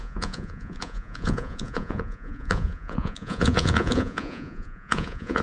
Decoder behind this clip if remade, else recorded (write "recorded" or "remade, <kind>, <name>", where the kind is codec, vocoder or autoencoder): remade, vocoder, Vocos